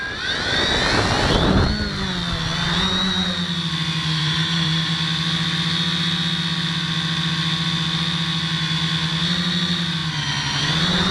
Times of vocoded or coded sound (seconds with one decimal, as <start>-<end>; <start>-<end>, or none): 4.2-4.9